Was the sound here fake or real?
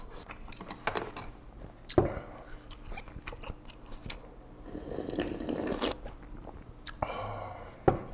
real